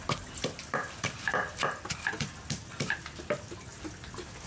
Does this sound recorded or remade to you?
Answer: recorded